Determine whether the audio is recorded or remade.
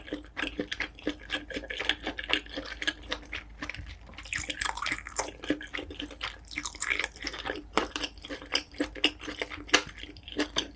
recorded